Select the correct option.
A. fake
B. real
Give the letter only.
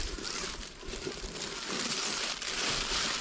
A